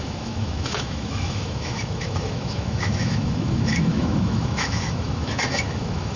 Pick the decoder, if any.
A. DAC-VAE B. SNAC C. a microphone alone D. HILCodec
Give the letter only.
A